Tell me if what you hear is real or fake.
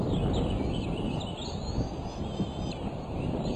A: real